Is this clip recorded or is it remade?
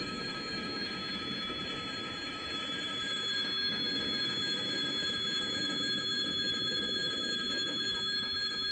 remade